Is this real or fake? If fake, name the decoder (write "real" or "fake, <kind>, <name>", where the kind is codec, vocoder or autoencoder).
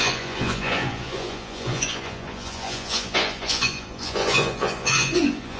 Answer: fake, vocoder, Vocos